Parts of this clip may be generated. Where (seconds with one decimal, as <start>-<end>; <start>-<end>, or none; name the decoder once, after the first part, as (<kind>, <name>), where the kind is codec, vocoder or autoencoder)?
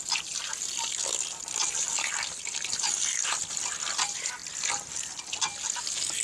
none